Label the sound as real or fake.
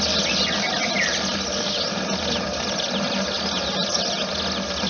real